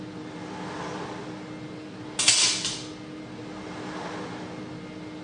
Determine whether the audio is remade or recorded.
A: recorded